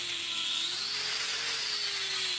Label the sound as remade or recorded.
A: remade